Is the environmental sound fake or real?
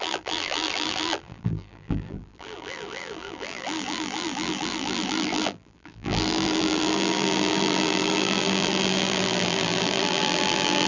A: fake